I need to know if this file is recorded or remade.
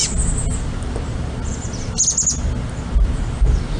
recorded